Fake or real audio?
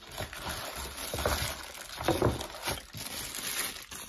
real